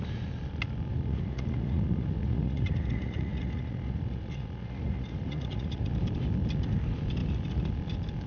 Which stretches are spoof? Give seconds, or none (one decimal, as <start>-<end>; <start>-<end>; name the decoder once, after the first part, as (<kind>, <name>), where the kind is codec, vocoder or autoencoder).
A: 0.9-5.9 (vocoder, Vocos)